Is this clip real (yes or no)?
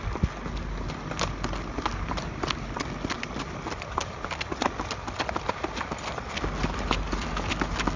yes